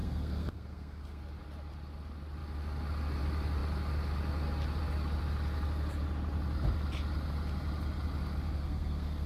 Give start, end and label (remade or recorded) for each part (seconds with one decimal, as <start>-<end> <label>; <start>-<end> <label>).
0.0-1.2 remade; 1.2-8.6 recorded; 8.6-9.3 remade